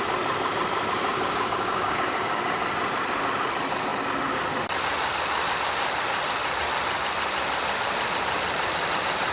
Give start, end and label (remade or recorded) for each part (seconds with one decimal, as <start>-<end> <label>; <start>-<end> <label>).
0.0-1.1 recorded; 1.1-2.4 remade; 2.4-9.3 recorded